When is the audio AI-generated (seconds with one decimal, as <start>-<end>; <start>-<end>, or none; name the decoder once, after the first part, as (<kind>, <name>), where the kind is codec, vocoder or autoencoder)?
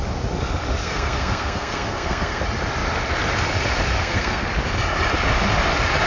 0.8-2.4 (codec, SNAC); 4.0-4.5